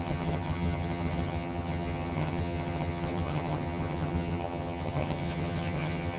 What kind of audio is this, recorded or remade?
remade